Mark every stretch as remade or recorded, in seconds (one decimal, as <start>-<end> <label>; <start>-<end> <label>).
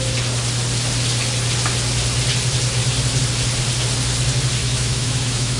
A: 0.0-4.6 recorded; 4.6-5.6 remade